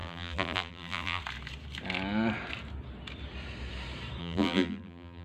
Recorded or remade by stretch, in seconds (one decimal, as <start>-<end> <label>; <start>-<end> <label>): 0.0-1.2 remade; 1.2-4.2 recorded; 4.2-5.2 remade